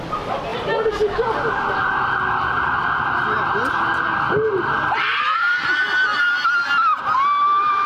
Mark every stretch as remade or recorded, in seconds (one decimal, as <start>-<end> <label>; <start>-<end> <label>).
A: 0.0-7.9 recorded